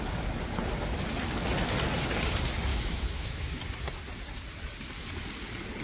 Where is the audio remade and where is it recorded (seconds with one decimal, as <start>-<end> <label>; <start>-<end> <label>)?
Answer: 0.0-2.7 recorded; 2.7-3.6 remade; 3.6-5.8 recorded